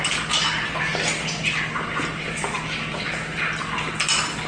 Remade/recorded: recorded